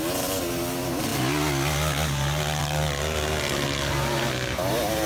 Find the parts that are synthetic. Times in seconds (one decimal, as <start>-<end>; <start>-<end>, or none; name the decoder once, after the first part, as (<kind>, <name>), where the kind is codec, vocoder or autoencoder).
none